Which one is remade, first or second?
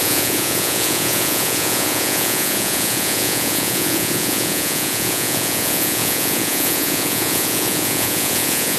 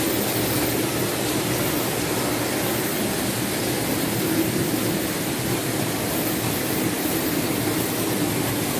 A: first